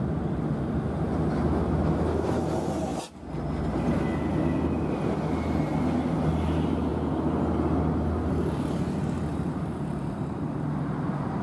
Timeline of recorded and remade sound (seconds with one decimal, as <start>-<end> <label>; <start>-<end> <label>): 0.0-9.3 recorded; 9.3-11.4 remade